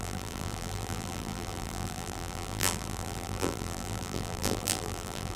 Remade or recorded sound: remade